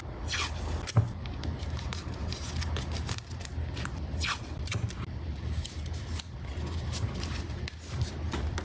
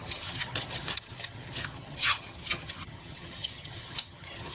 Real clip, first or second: first